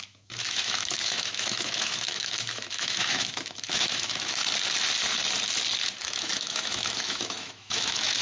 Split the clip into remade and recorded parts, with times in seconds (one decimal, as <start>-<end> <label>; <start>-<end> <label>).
0.0-4.4 remade; 4.4-6.0 recorded; 6.0-8.2 remade